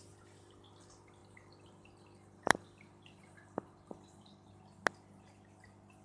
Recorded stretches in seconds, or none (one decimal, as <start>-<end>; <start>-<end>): 0.0-1.2; 4.5-6.0